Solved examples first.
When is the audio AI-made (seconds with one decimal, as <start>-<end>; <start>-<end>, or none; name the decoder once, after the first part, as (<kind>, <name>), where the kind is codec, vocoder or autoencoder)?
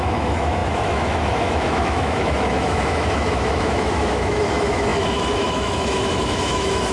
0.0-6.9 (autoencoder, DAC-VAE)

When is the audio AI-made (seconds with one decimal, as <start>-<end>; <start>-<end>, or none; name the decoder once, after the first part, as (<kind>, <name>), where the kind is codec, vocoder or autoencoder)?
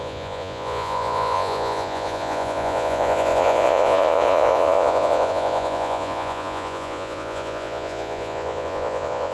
0.0-9.3 (vocoder, Vocos)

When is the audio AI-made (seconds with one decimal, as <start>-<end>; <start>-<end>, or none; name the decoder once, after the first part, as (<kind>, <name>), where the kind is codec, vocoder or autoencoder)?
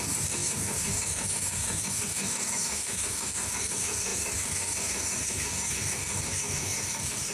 0.0-7.3 (codec, DAC)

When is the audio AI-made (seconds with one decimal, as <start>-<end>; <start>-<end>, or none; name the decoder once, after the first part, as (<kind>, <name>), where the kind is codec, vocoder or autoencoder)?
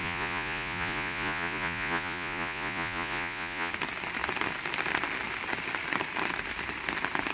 0.0-3.7 (vocoder, Vocos)